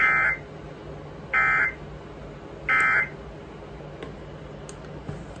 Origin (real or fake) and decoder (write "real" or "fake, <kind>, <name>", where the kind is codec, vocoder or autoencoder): real